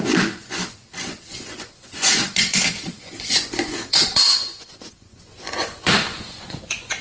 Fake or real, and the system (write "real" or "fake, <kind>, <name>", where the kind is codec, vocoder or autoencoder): fake, vocoder, Vocos